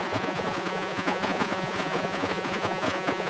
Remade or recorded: remade